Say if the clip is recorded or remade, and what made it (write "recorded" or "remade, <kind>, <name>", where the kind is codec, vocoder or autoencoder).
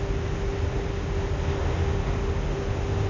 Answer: recorded